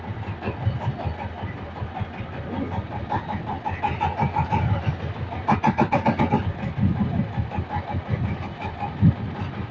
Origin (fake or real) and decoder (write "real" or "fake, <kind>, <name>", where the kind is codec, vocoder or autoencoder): real